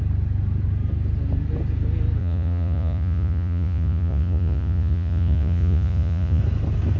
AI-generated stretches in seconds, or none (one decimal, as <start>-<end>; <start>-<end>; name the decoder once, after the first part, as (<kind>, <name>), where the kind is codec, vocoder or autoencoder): 2.2-6.4 (vocoder, Vocos)